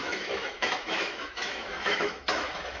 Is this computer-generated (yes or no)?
yes